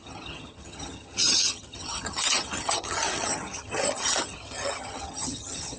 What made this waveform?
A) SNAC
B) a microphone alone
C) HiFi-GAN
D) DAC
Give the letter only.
C